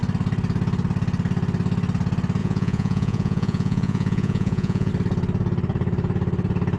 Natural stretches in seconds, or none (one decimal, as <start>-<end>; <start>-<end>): 0.0-2.4; 4.9-6.8